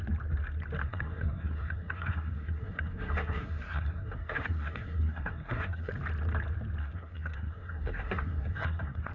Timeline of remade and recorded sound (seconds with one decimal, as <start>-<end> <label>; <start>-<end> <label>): 0.0-0.8 recorded; 0.8-5.9 remade; 5.9-6.8 recorded; 6.8-9.1 remade